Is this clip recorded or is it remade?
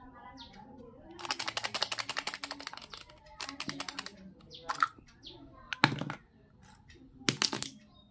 recorded